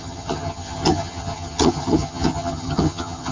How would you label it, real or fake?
fake